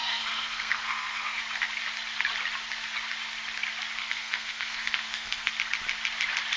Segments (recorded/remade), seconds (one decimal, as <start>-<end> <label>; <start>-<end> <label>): 0.0-1.4 remade; 1.4-4.0 recorded; 4.0-5.5 remade; 5.5-6.6 recorded

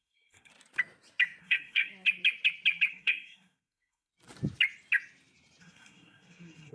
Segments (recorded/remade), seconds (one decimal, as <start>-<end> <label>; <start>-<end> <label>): 0.0-0.5 remade; 0.5-1.4 recorded; 1.4-1.9 remade; 1.9-2.9 recorded; 2.9-4.1 remade; 4.1-5.6 recorded; 5.6-6.7 remade

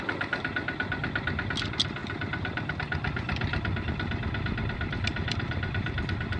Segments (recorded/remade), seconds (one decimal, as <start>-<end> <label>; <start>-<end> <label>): 0.0-5.1 recorded; 5.1-6.0 remade; 6.0-6.4 recorded